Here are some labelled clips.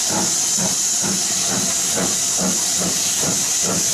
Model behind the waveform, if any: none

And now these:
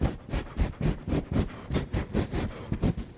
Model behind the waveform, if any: none